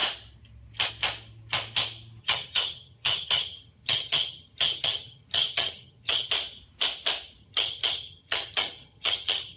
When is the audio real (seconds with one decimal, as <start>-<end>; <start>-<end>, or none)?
0.0-2.2; 6.3-7.4